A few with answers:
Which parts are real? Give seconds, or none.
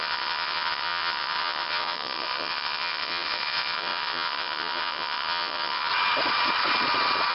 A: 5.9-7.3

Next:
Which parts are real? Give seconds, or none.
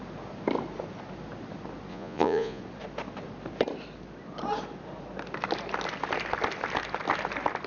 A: 0.0-1.9; 2.6-7.7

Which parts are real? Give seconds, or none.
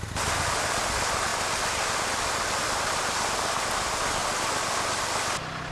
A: 0.0-5.7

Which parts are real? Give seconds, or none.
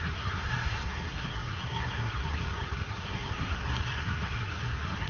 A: none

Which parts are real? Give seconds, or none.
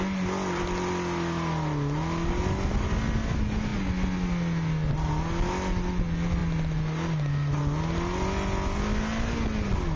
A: 0.0-10.0